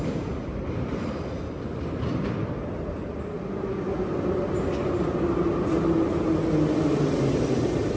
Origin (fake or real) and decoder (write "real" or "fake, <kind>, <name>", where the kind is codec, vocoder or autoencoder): real